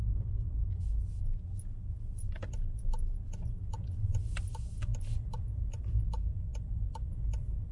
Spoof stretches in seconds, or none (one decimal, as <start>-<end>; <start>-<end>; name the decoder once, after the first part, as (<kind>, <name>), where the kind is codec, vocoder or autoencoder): none

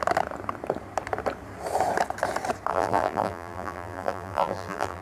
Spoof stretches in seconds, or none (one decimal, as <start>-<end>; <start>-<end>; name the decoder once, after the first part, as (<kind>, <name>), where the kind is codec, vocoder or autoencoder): 2.7-5.0 (vocoder, BigVGAN v2)